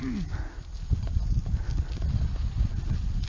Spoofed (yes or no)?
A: no